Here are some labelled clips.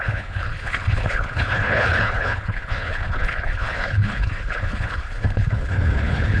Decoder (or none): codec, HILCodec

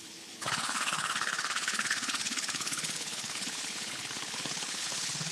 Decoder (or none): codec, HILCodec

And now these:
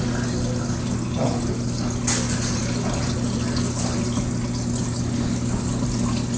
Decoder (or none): none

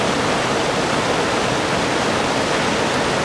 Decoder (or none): none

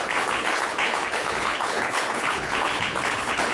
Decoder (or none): codec, HILCodec